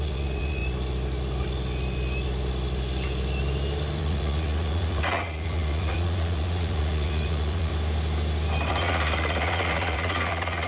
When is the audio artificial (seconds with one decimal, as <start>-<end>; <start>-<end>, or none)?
0.0-0.6; 4.0-7.7; 8.7-10.7